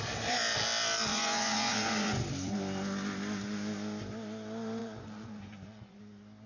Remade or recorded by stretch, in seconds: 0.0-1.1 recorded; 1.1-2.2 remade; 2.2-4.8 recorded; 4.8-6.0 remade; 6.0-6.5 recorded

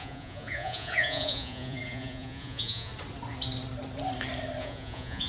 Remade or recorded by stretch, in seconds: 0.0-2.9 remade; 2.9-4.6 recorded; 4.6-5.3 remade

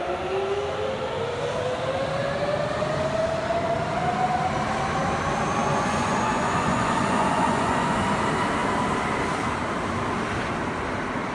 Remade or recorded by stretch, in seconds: 0.0-5.6 recorded; 5.6-8.0 remade; 8.0-11.3 recorded